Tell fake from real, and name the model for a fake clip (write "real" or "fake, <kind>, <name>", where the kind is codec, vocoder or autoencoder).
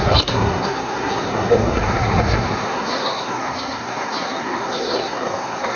fake, codec, SNAC